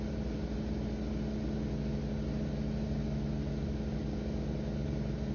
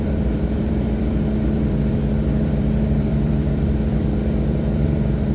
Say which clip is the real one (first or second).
first